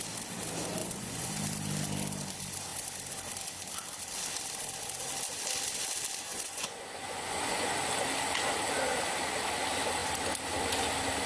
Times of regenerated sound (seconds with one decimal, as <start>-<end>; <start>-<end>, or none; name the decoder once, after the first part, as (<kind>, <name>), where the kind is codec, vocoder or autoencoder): 0.8-1.3 (vocoder, Vocos); 6.3-7.7